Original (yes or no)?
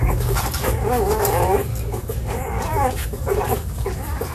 no